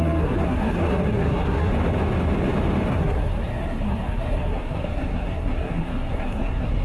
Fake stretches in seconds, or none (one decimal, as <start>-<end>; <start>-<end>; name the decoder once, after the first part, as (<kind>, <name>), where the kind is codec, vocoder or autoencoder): 0.0-1.7 (codec, SNAC); 2.9-6.8